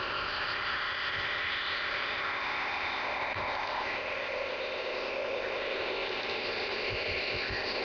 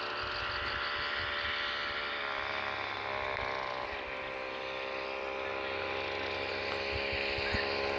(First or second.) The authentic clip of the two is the second